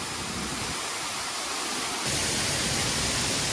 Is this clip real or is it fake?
real